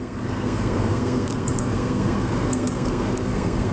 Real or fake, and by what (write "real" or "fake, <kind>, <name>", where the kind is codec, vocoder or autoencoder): fake, codec, SNAC